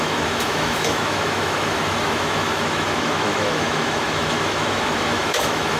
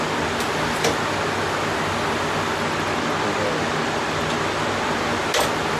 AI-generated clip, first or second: first